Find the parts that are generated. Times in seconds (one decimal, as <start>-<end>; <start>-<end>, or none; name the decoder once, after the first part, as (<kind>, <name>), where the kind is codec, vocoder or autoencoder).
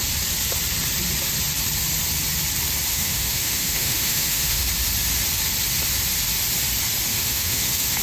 2.9-4.6 (autoencoder, DAC-VAE); 7.1-8.0